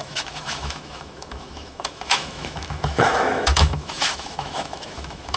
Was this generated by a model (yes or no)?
yes